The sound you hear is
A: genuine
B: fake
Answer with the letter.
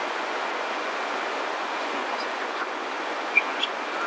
B